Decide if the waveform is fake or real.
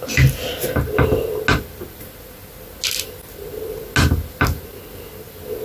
real